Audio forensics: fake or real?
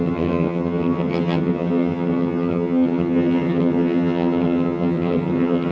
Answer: fake